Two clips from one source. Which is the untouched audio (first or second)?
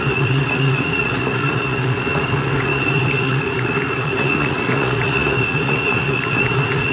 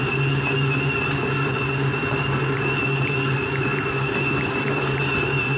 second